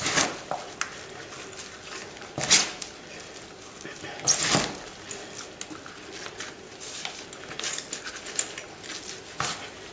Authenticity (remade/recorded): recorded